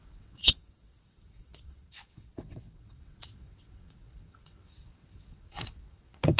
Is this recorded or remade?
remade